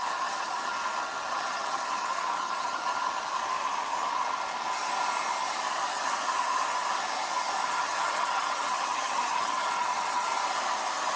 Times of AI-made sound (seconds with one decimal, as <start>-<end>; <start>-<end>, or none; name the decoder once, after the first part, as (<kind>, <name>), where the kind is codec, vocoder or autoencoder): 0.0-0.7 (vocoder, HiFi-GAN); 1.3-2.8; 7.7-10.3

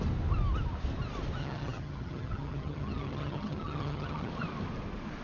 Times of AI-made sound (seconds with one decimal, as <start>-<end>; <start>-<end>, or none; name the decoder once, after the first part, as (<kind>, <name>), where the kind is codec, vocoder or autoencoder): 1.4-4.3 (vocoder, HiFi-GAN)

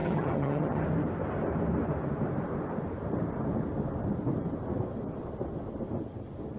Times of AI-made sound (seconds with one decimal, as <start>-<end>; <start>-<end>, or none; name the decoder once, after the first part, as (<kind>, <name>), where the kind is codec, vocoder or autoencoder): 0.0-0.8 (vocoder, HiFi-GAN)

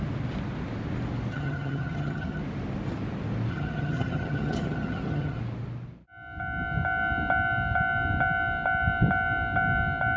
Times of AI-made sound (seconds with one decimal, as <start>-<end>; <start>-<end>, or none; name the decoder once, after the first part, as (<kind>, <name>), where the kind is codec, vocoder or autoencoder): 1.3-2.4 (vocoder, HiFi-GAN); 3.5-5.4

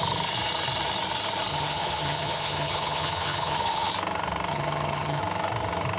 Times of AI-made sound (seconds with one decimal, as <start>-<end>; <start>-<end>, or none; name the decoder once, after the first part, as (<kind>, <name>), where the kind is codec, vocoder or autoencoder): 1.5-3.9 (vocoder, HiFi-GAN); 4.5-5.2

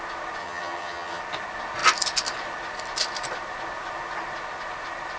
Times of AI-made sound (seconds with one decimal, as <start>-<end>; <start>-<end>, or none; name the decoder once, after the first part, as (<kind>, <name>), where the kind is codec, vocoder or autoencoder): 0.4-1.2 (vocoder, HiFi-GAN)

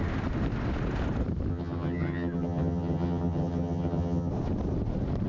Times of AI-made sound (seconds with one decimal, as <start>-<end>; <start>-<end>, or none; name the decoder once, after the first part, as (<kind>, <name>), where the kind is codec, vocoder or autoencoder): 1.5-4.3 (vocoder, HiFi-GAN)